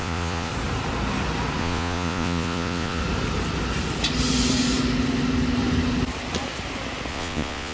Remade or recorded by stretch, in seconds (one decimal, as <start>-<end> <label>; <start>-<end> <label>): 0.0-0.5 remade; 0.5-1.6 recorded; 1.6-3.0 remade; 3.0-7.1 recorded; 7.1-7.7 remade